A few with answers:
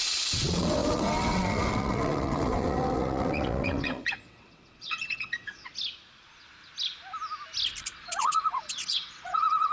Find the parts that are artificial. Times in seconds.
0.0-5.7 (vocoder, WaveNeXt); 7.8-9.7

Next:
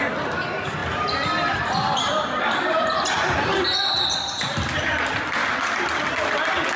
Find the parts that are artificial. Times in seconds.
none

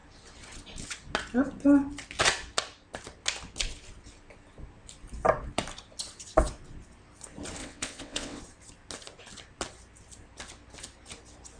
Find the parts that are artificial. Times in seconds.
7.6-8.4 (vocoder, WaveNeXt)

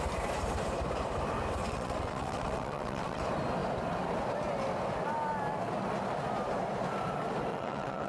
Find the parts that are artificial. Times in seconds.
1.6-3.2 (vocoder, WaveNeXt); 7.5-8.1

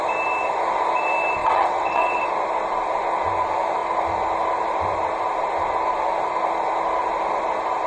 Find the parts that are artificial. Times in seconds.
1.4-2.3 (vocoder, WaveNeXt)